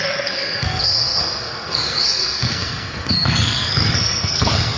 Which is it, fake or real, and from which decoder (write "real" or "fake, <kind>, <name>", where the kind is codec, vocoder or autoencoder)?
fake, codec, SNAC